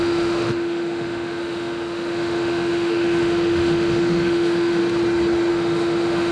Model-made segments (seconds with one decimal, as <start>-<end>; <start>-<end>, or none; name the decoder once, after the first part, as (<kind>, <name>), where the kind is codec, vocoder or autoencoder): 0.0-4.8 (autoencoder, DAC-VAE); 5.5-6.3